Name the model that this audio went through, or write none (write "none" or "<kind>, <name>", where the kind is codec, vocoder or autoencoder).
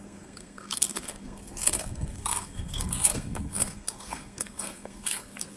codec, SNAC